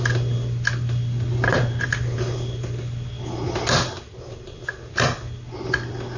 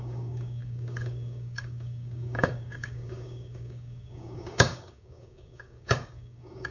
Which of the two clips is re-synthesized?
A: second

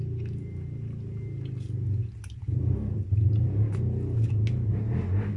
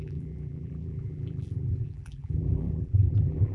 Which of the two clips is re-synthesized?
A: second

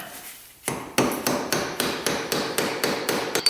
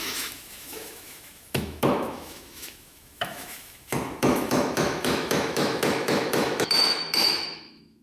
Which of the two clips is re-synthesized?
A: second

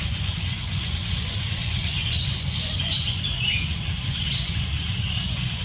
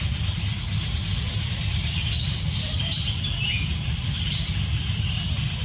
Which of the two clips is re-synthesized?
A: first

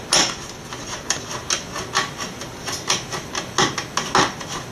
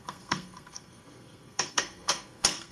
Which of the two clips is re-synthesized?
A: second